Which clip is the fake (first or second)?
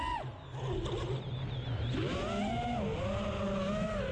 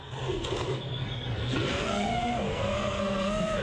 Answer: second